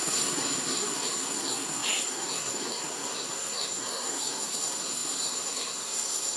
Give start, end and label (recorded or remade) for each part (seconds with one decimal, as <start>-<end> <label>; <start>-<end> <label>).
0.0-6.4 remade